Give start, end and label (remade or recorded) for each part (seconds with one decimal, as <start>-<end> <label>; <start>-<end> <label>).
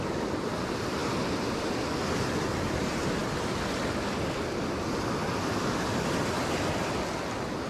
0.0-7.7 recorded